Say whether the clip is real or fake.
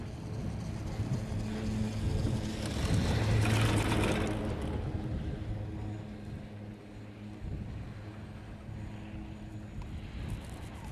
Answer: real